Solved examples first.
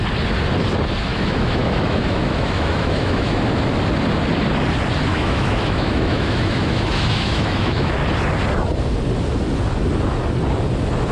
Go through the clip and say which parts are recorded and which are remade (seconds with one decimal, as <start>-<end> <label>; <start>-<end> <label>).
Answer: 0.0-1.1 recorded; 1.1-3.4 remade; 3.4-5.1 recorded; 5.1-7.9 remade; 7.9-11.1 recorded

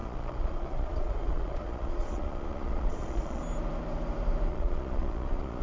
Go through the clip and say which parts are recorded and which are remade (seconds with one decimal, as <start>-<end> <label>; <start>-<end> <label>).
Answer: 0.0-3.4 remade; 3.4-4.5 recorded; 4.5-5.6 remade

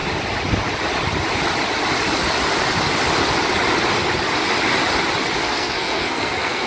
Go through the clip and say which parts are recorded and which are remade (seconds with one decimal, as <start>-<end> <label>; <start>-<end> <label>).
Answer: 0.0-5.4 recorded; 5.4-6.7 remade

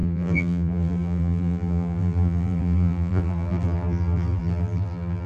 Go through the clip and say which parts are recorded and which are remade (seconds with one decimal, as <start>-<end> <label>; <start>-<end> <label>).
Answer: 0.0-5.3 remade

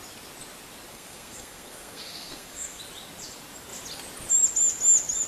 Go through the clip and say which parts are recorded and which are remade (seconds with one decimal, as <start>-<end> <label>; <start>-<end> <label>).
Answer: 0.0-0.9 recorded; 0.9-2.8 remade; 2.8-5.3 recorded

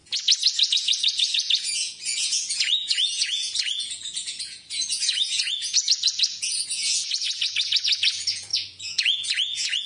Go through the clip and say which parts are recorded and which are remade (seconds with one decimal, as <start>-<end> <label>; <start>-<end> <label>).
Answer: 0.0-9.9 remade

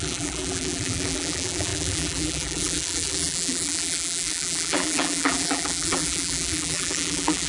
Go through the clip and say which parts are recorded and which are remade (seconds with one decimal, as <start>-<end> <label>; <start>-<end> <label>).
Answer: 0.0-7.5 remade

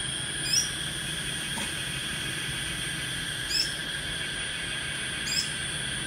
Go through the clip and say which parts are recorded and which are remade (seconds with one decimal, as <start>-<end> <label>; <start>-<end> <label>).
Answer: 0.0-2.0 recorded; 2.0-2.5 remade; 2.5-3.8 recorded; 3.8-4.5 remade; 4.5-6.1 recorded